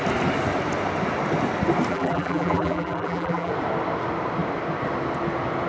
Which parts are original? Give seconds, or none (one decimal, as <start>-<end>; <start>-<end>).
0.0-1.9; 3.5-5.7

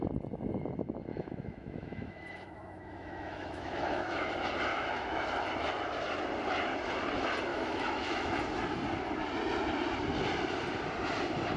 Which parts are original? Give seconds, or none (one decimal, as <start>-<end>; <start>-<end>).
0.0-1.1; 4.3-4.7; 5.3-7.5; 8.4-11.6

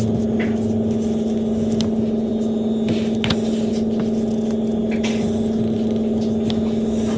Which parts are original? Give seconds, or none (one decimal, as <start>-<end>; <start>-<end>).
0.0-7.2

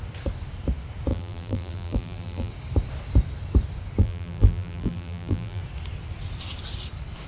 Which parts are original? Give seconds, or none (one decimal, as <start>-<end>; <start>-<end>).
0.0-1.1; 2.5-4.0; 5.6-7.3

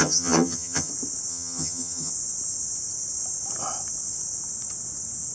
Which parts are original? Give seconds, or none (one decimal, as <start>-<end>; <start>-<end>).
0.9-1.3; 2.1-5.3